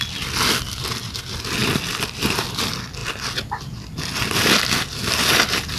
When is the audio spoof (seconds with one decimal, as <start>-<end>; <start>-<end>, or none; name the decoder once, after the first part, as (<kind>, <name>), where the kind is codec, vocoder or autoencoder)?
none